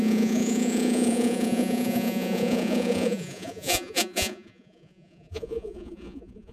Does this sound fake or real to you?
fake